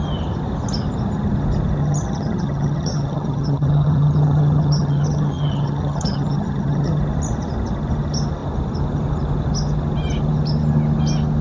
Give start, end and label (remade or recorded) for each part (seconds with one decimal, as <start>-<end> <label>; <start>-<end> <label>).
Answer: 0.0-1.8 recorded; 1.8-7.0 remade; 7.0-11.4 recorded